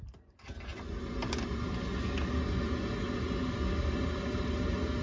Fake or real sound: real